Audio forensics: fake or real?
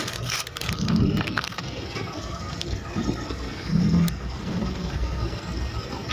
fake